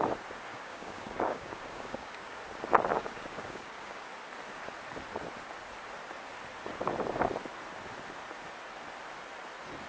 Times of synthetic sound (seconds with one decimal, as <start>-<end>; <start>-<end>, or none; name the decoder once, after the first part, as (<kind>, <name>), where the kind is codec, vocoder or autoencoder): 0.5-2.4 (codec, DAC); 2.9-4.1